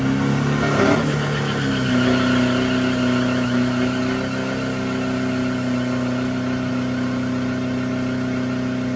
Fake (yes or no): no